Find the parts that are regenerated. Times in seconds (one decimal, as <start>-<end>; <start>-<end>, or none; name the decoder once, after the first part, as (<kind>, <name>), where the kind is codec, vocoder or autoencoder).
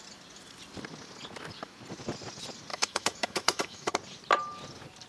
2.7-3.9 (autoencoder, DAC-VAE)